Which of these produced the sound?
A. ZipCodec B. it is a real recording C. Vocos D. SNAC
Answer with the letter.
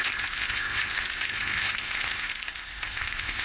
A